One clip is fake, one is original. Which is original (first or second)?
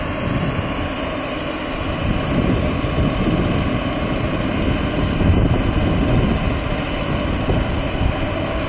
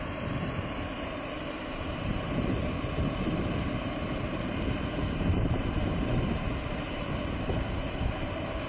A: first